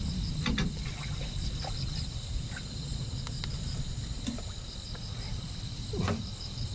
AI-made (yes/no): yes